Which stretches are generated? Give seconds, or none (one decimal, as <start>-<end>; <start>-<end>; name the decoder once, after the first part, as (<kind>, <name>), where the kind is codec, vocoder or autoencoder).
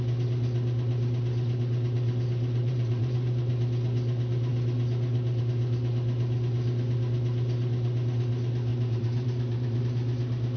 2.6-3.5 (vocoder, BigVGAN v2); 8.7-9.8